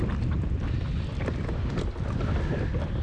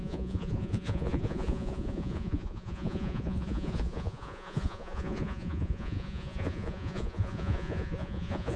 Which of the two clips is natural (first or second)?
first